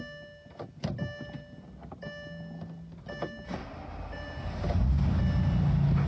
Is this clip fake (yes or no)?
no